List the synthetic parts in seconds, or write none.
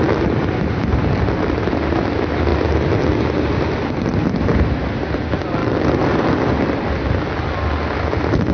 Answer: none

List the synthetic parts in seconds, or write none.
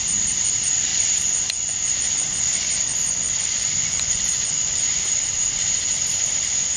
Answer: 0.9-5.0 (vocoder, Vocos)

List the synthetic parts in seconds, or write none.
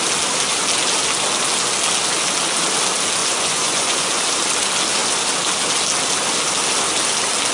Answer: 3.2-4.2 (vocoder, Vocos)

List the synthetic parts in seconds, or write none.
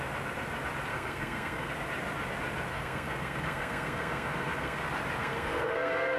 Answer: 0.9-1.7 (codec, SNAC); 2.7-4.8; 5.2-6.2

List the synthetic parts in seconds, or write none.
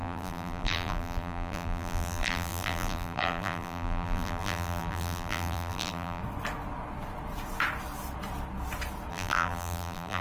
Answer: 0.0-6.2 (vocoder, BigVGAN v2); 9.1-10.2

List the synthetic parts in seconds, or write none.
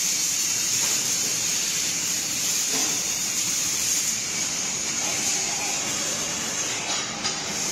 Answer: 0.0-7.7 (vocoder, BigVGAN v2)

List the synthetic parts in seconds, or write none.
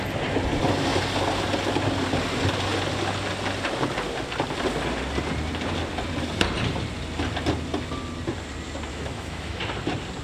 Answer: 8.9-9.6 (autoencoder, DAC-VAE)